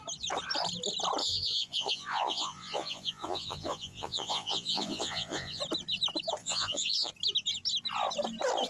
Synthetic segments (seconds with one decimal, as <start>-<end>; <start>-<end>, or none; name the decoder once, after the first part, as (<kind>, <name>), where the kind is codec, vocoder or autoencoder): 1.2-5.6 (vocoder, Vocos); 6.4-7.1